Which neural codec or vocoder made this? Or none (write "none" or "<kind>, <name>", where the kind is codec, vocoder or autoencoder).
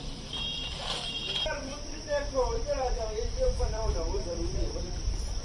vocoder, BigVGAN v2